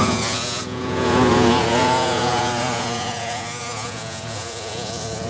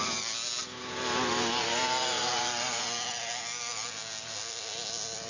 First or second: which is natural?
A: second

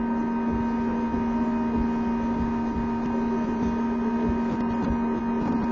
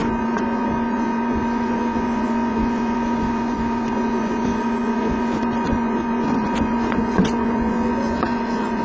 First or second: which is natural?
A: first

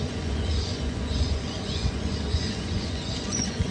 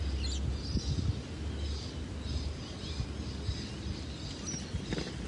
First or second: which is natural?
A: second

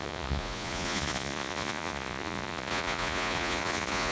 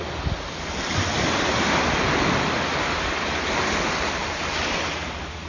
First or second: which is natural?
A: second